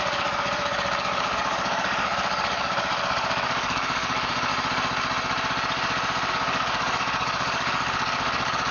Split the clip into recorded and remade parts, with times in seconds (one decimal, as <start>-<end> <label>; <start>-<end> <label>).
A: 0.0-4.5 remade; 4.5-6.3 recorded; 6.3-8.7 remade